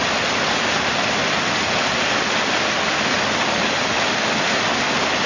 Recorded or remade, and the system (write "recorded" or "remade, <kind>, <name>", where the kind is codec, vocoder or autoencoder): recorded